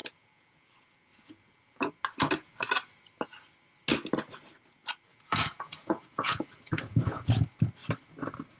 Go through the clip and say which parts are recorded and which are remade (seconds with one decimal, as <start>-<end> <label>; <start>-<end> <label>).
0.0-1.9 remade; 1.9-5.1 recorded; 5.1-7.3 remade; 7.3-8.6 recorded